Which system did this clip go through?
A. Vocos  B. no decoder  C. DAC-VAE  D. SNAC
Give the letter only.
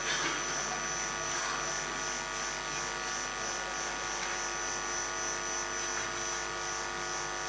B